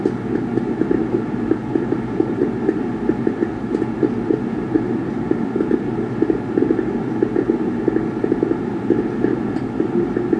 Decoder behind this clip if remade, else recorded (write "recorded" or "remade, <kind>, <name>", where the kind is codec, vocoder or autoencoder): recorded